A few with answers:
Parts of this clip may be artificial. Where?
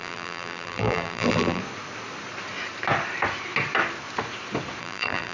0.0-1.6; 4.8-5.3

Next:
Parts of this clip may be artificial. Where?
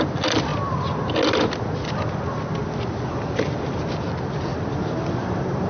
3.1-4.1; 4.5-5.7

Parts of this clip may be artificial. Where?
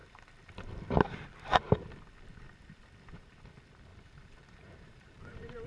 3.9-5.7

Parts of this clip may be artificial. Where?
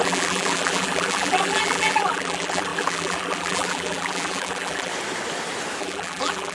0.0-4.9; 5.8-6.5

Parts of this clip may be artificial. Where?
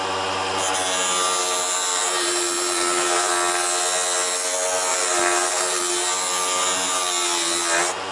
1.9-3.3; 4.9-5.8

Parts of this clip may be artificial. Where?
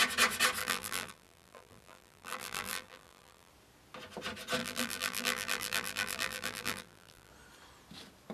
0.6-3.5; 4.6-7.3